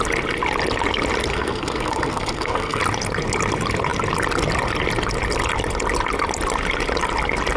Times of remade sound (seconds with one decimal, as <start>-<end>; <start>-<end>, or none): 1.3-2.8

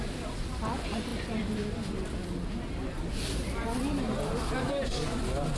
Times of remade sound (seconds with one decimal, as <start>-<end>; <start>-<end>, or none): none

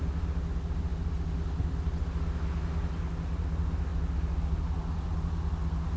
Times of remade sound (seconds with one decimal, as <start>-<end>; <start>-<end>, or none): none

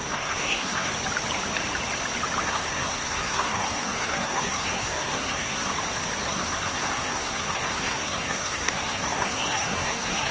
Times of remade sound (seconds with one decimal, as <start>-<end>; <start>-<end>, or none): 0.0-0.9; 2.4-5.7; 6.3-10.3

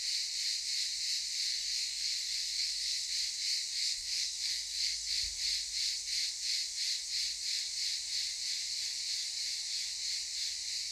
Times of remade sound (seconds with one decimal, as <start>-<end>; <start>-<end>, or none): 1.5-3.1; 3.8-5.1

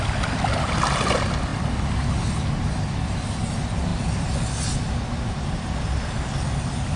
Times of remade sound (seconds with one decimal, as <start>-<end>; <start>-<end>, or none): none

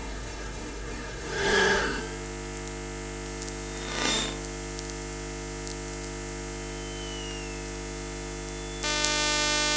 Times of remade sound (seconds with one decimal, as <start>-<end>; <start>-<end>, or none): 0.0-2.0

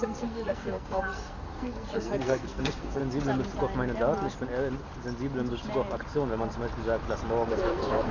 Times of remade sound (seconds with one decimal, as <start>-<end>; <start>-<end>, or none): 0.0-3.0; 7.5-8.1